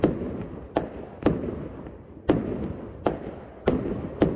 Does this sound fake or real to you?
real